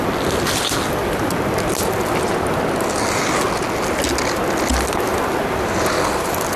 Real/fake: real